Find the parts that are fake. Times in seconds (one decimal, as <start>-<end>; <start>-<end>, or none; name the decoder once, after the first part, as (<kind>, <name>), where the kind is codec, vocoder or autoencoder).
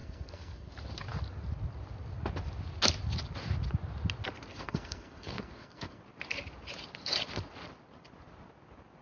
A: 0.0-0.7 (codec, SNAC); 4.5-6.0